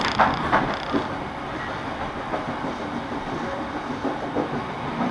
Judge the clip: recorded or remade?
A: remade